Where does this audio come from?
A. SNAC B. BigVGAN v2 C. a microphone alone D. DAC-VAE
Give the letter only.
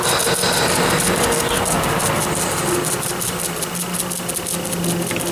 C